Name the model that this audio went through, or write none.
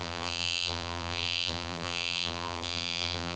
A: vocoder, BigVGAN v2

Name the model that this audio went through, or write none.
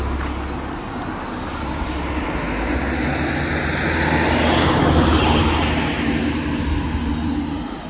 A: none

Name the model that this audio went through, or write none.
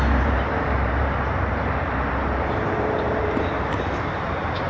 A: vocoder, BigVGAN v2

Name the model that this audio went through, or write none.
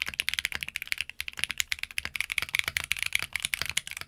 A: none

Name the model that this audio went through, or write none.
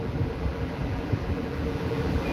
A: vocoder, BigVGAN v2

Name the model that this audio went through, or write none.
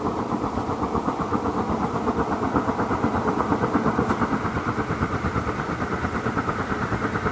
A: none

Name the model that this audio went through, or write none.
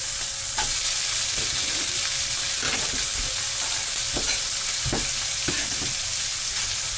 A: none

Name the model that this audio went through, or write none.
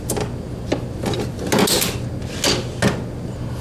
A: none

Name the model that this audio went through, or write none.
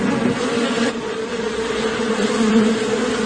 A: none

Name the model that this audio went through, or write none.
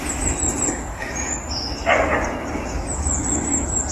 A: none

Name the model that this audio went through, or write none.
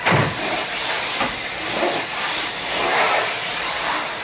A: vocoder, BigVGAN v2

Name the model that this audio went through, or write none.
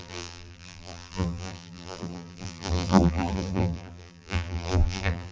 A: vocoder, BigVGAN v2